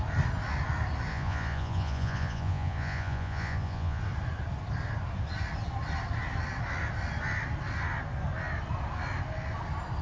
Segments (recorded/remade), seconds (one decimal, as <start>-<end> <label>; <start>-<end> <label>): 0.0-1.1 recorded; 1.1-4.0 remade; 4.0-10.0 recorded